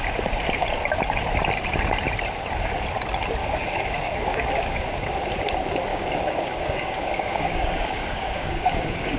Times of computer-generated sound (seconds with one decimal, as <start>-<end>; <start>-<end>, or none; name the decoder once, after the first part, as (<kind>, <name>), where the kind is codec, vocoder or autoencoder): 3.4-5.1 (codec, DAC); 5.9-9.2